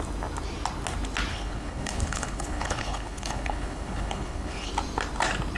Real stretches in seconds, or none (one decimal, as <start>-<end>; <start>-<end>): 0.0-1.3; 4.7-5.6